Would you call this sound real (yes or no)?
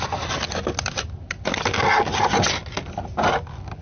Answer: yes